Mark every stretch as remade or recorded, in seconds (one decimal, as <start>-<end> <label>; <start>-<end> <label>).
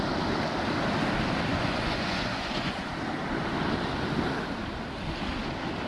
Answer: 0.0-1.5 recorded; 1.5-2.9 remade; 2.9-5.9 recorded